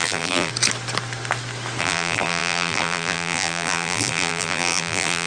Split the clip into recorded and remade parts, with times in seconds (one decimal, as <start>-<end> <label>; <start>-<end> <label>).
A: 0.0-0.5 remade; 0.5-1.8 recorded; 1.8-5.3 remade